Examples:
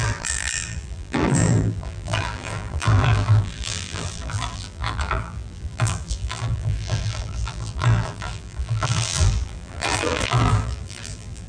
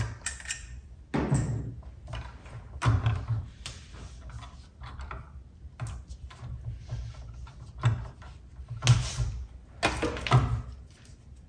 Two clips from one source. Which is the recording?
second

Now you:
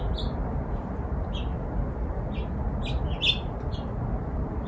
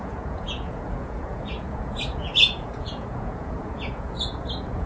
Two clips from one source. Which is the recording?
first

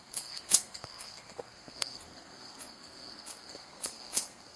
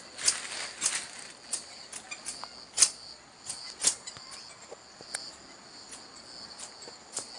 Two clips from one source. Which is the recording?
second